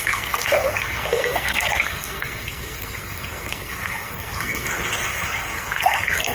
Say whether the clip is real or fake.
fake